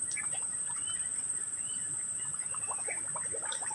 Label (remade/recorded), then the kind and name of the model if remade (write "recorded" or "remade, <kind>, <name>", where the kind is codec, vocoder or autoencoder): recorded